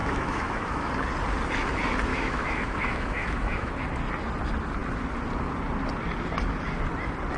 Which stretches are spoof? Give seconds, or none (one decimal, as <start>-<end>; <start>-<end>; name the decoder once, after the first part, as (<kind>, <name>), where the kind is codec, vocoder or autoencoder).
0.0-0.9 (autoencoder, DAC-VAE); 2.1-3.7